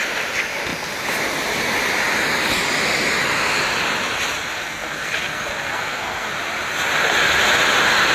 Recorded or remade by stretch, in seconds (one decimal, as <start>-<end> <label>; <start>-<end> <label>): 0.0-4.5 recorded; 4.5-6.3 remade; 6.3-8.1 recorded